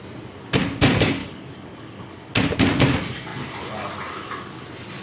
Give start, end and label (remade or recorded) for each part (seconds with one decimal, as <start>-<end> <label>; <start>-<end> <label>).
0.0-1.2 recorded; 1.2-2.3 remade; 2.3-5.0 recorded